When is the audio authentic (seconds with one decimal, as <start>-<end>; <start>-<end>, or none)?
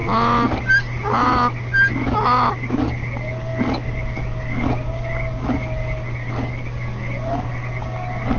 0.0-8.4